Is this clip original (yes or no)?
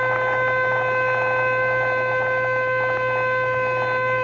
yes